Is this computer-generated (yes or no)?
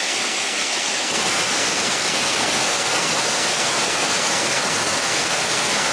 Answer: yes